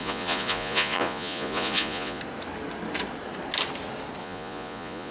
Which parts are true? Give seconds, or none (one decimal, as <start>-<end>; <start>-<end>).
2.2-4.2

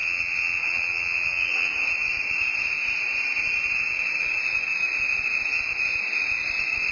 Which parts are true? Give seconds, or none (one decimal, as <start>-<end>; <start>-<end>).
1.7-6.9

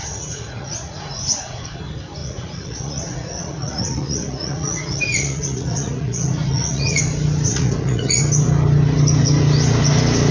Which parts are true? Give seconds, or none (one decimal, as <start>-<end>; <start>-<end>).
1.8-2.2; 7.0-7.5; 8.2-10.3

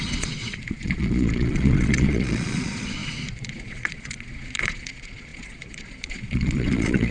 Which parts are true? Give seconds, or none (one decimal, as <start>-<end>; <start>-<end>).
none

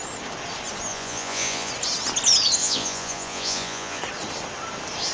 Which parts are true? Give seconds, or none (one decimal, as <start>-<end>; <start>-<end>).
0.0-0.9; 1.7-2.6; 4.0-5.1

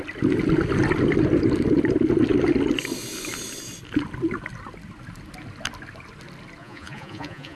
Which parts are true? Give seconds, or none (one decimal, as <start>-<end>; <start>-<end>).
0.0-6.6

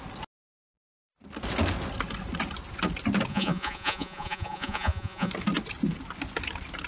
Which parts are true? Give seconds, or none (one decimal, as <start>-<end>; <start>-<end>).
0.0-3.3; 5.3-6.9

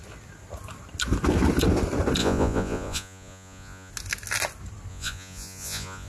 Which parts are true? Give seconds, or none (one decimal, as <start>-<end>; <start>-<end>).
0.0-2.2; 3.9-4.9